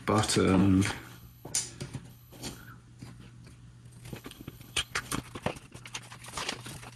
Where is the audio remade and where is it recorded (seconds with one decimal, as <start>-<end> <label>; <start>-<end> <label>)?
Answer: 0.0-0.6 recorded; 0.6-1.5 remade; 1.5-2.1 recorded; 2.1-2.7 remade; 2.7-4.1 recorded; 4.1-5.2 remade; 5.2-7.0 recorded